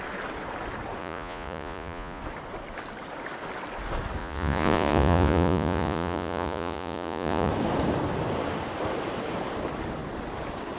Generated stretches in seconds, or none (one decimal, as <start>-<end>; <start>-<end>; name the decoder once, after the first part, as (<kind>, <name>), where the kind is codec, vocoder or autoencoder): 1.0-2.2 (vocoder, Vocos); 4.2-7.5